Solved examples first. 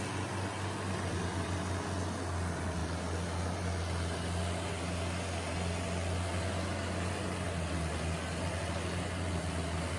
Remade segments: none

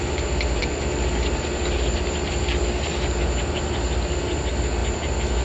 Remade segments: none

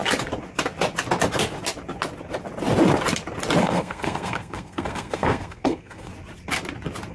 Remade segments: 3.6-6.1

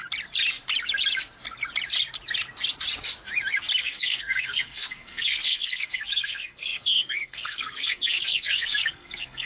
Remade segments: 3.8-9.5